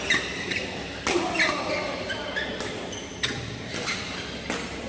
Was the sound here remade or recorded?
recorded